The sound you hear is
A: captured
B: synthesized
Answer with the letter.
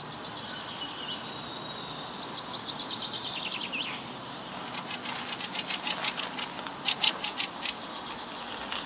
A